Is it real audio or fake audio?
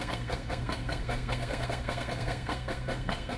fake